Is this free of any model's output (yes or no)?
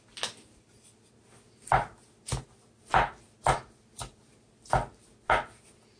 yes